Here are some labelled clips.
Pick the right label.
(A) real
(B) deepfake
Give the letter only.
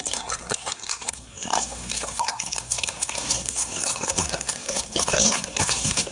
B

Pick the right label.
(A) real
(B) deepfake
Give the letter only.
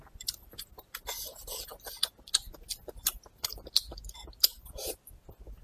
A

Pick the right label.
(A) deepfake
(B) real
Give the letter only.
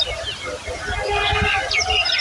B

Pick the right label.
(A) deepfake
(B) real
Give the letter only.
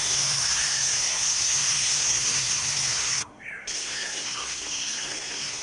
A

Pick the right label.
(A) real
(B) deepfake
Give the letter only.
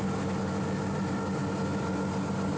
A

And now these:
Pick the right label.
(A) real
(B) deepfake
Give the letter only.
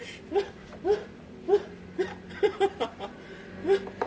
A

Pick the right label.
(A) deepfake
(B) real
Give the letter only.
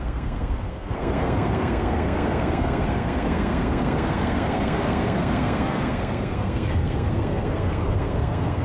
A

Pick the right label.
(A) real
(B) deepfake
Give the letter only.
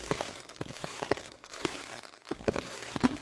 B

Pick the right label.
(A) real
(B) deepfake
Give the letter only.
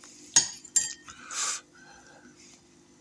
A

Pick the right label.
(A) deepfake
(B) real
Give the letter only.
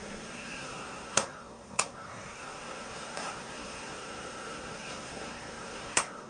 A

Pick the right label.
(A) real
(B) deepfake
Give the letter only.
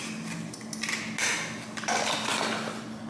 A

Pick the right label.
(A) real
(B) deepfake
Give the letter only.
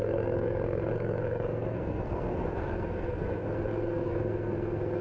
B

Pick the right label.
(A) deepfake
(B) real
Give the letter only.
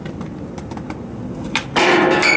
B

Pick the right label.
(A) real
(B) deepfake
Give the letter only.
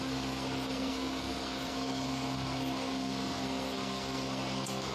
B